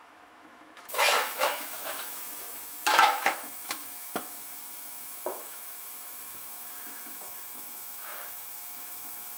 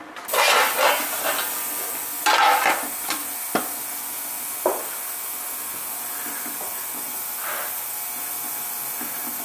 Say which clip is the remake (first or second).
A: first